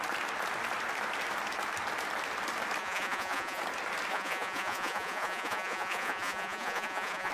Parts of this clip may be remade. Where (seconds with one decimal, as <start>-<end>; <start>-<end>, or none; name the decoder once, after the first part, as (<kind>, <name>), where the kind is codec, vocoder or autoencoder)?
2.8-3.6 (vocoder, Vocos); 4.1-7.3